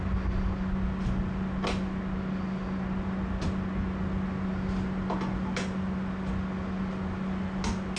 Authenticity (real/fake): real